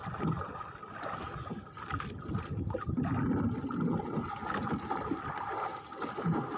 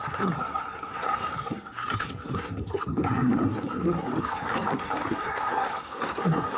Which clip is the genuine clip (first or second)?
first